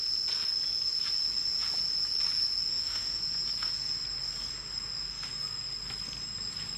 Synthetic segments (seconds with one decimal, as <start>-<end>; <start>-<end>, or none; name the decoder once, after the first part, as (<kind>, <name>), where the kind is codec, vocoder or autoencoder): 2.7-3.2 (autoencoder, DAC-VAE)